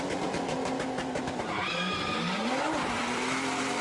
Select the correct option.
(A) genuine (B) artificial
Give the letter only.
B